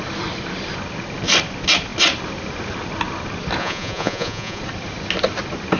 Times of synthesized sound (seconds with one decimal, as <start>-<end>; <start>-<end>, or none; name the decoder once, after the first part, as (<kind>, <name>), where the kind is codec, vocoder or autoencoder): 3.6-4.6 (vocoder, Vocos)